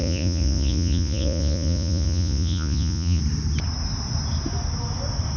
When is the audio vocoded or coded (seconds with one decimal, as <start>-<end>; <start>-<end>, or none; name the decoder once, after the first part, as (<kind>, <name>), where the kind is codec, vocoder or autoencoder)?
0.0-3.2 (vocoder, Vocos)